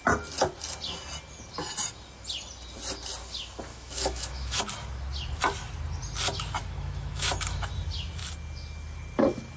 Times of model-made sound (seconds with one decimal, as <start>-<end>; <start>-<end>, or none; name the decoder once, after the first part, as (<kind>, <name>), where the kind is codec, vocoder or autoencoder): 3.7-4.6 (autoencoder, DAC-VAE); 6.6-7.7